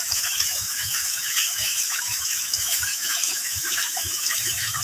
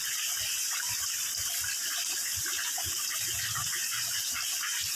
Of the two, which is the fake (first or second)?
first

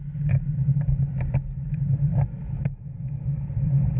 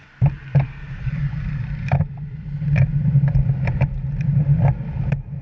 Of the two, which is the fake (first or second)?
second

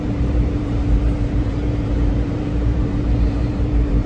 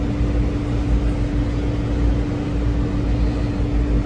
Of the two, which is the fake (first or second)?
first